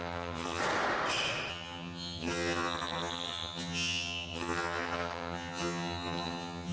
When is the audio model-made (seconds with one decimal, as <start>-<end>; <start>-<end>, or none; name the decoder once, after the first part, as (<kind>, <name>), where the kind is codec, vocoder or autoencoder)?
0.0-0.6 (vocoder, HiFi-GAN); 1.5-6.7